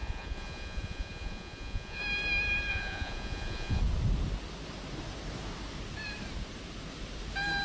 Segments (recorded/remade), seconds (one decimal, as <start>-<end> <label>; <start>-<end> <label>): 0.0-2.0 remade; 2.0-2.7 recorded; 2.7-3.8 remade; 3.8-7.6 recorded